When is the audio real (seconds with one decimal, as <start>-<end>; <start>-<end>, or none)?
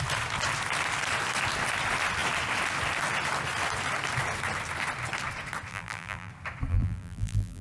0.0-5.7; 6.3-6.7